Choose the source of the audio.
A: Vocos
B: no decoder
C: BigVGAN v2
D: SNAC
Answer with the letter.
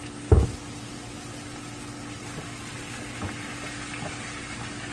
B